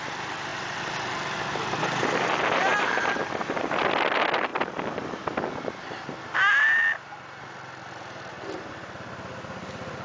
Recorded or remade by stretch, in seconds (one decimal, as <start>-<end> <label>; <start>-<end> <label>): 0.0-10.0 recorded